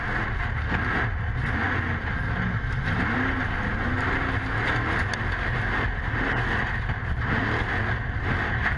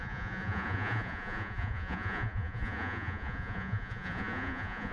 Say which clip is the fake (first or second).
second